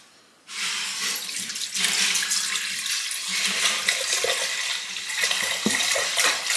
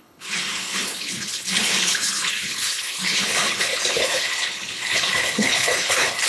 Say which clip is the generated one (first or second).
second